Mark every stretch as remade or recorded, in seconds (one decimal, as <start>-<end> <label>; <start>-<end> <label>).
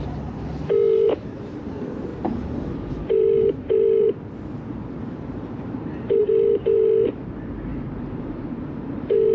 0.0-9.3 remade